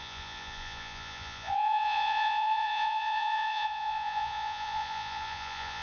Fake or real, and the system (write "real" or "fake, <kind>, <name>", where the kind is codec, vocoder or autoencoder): fake, vocoder, Vocos